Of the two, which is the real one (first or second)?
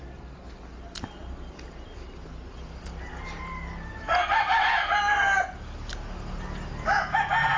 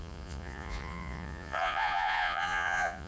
first